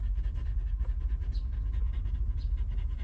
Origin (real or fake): real